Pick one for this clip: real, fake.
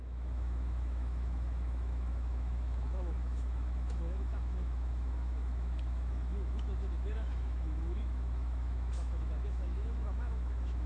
fake